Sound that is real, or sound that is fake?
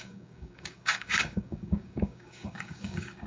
fake